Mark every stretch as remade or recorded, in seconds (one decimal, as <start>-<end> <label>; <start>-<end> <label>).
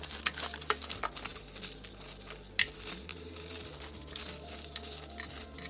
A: 0.0-5.7 recorded